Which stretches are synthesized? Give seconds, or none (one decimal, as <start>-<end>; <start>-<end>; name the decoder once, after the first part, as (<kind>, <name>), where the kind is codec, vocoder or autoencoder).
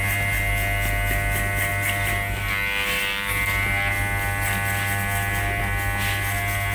none